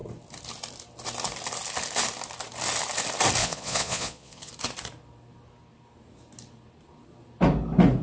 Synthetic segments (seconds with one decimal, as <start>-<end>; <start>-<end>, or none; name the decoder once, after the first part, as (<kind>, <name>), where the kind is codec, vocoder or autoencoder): 3.4-4.5 (vocoder, Vocos)